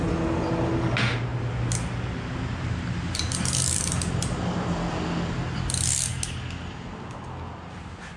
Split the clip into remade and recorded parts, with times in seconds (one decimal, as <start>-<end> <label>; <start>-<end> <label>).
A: 0.0-8.2 recorded